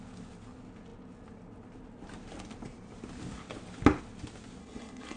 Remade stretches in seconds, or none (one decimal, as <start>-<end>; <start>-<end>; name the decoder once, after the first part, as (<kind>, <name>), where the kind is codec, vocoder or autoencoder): 4.6-5.2 (codec, HILCodec)